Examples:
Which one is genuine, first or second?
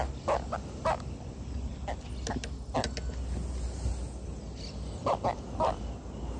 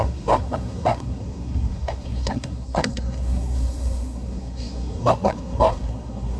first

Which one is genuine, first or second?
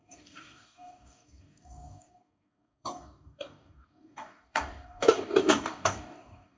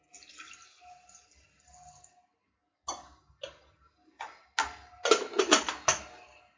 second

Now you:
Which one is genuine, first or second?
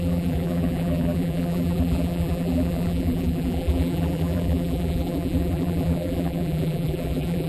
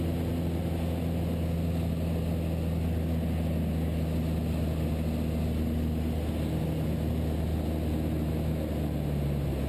second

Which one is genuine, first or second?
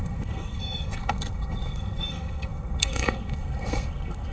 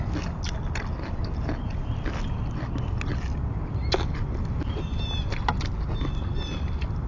second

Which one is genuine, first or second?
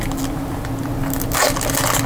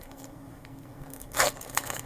first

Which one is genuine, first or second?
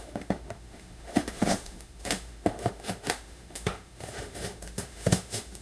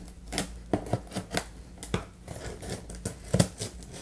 second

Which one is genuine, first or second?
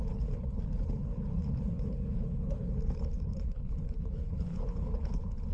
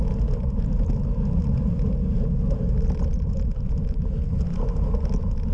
second